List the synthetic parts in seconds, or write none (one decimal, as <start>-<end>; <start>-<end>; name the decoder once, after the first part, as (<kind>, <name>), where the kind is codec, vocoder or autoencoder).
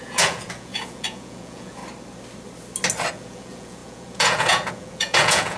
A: 0.0-1.8 (vocoder, Vocos); 3.1-5.6